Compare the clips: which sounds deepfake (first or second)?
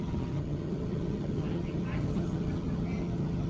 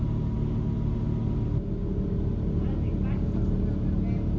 first